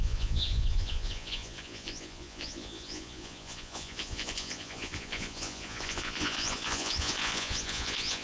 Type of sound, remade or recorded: remade